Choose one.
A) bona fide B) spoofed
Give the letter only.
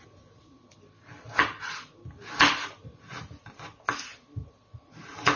A